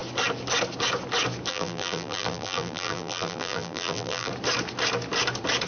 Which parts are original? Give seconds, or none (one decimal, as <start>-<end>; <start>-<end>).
0.0-1.5; 4.3-5.7